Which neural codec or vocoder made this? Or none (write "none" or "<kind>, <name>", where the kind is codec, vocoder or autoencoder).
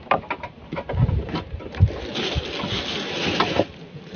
none